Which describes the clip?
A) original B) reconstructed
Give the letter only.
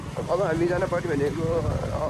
A